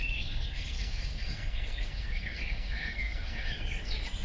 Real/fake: fake